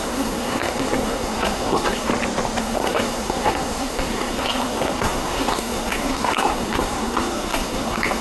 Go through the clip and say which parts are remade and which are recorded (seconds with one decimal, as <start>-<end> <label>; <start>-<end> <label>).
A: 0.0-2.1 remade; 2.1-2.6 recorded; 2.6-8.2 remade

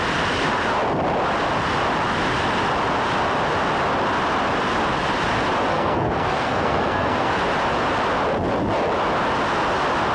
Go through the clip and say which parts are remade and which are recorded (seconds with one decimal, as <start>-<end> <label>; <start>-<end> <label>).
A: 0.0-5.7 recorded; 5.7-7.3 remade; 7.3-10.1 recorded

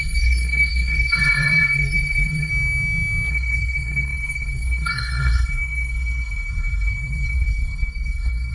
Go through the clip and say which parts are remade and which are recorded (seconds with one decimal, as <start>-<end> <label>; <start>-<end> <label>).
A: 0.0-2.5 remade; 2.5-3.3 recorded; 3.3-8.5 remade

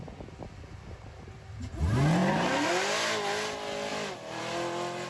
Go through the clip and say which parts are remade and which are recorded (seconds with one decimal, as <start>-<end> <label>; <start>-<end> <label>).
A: 0.0-3.9 recorded; 3.9-4.4 remade; 4.4-5.1 recorded